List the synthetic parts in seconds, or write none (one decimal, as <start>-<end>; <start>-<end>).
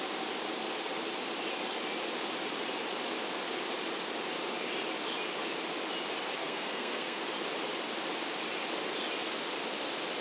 6.4-7.2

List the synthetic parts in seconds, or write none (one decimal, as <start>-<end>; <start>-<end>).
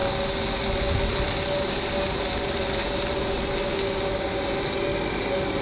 none